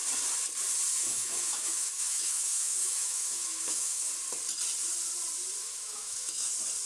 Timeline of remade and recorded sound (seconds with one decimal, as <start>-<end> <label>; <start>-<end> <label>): 0.0-1.0 recorded; 1.0-4.1 remade; 4.1-5.6 recorded; 5.6-6.5 remade; 6.5-6.9 recorded